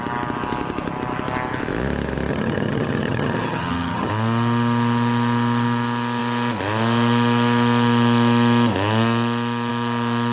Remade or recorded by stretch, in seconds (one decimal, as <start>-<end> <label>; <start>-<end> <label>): 0.0-2.3 recorded; 2.3-4.1 remade; 4.1-10.3 recorded